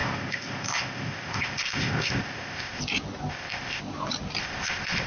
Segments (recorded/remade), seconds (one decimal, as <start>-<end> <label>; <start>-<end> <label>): 0.0-2.8 remade; 2.8-3.3 recorded; 3.3-3.8 remade; 3.8-4.4 recorded; 4.4-5.1 remade